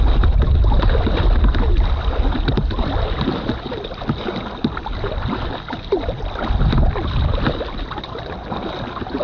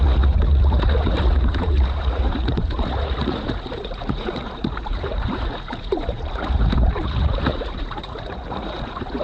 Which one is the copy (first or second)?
second